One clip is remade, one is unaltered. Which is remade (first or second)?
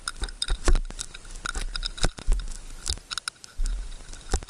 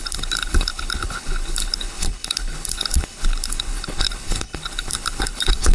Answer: second